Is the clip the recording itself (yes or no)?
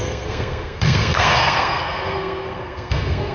no